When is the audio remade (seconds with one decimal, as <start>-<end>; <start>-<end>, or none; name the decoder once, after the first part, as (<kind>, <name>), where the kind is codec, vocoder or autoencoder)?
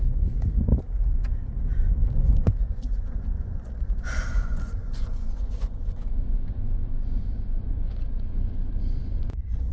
0.0-0.7 (vocoder, Vocos); 1.7-9.7